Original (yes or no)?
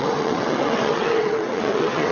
no